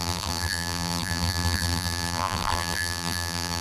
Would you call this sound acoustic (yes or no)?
no